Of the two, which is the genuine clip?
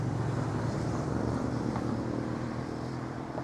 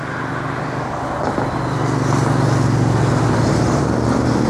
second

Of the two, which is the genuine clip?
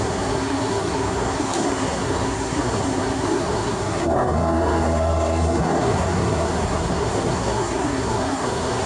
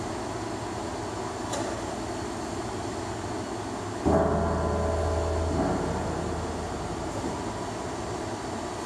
second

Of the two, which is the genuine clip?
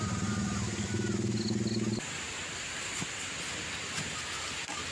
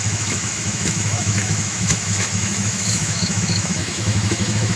first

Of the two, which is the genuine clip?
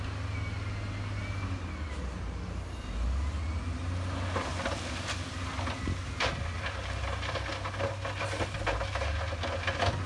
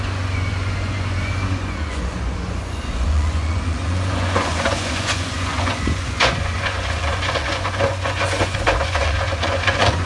first